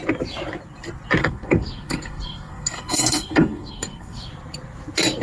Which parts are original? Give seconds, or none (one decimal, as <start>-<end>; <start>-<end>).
0.0-1.2; 4.3-5.2